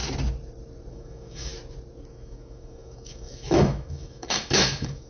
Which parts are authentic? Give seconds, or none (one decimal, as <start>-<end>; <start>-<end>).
0.0-0.9; 1.5-2.1